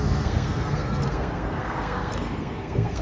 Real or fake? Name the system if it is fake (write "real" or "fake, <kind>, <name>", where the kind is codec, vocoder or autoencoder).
fake, codec, SNAC